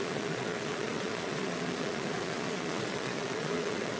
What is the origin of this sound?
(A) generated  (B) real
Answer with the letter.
A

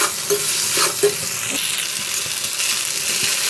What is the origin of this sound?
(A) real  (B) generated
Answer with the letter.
A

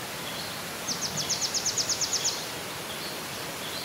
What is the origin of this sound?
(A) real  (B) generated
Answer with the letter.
A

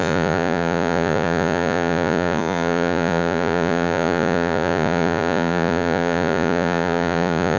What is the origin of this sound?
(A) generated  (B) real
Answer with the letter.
A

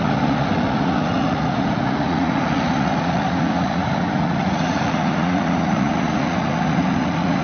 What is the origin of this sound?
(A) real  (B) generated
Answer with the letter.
B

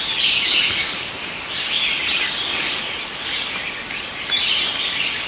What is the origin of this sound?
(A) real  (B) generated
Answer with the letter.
A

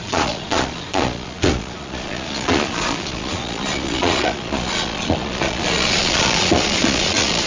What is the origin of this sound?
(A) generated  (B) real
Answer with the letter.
A